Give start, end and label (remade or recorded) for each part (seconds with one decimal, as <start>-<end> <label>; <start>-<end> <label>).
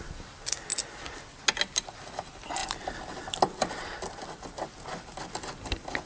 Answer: 0.0-6.1 recorded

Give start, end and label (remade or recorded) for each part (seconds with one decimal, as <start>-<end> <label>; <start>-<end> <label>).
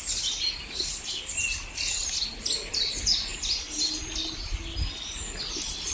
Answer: 0.0-5.9 recorded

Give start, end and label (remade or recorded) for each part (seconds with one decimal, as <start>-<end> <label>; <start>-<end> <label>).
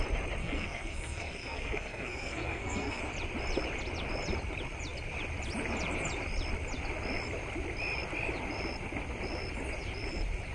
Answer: 0.0-0.4 recorded; 0.4-3.0 remade; 3.0-10.5 recorded